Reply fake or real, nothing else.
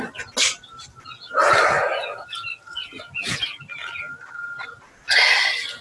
real